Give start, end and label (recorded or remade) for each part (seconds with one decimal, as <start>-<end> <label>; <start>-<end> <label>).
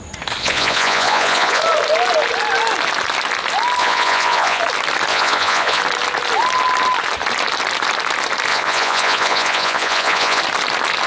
0.0-0.4 recorded; 0.4-1.6 remade; 1.6-3.8 recorded; 3.8-4.6 remade; 4.6-5.1 recorded; 5.1-5.8 remade; 5.8-8.5 recorded; 8.5-10.4 remade; 10.4-11.1 recorded